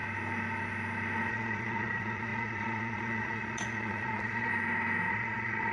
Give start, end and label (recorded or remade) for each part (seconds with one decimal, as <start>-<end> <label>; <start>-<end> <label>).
0.0-1.3 recorded; 1.3-4.5 remade; 4.5-5.1 recorded; 5.1-5.7 remade